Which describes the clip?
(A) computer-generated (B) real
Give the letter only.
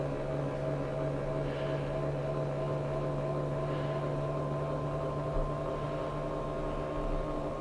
B